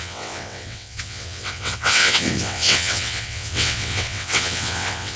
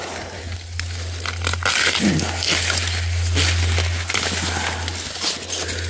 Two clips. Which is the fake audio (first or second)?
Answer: first